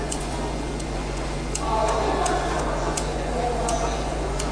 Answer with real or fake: fake